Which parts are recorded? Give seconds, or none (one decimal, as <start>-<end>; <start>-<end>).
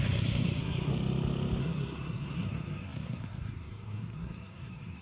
0.9-1.6